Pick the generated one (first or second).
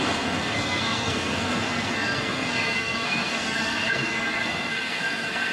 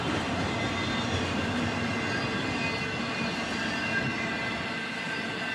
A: first